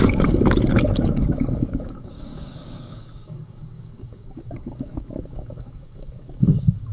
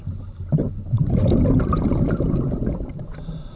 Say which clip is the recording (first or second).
second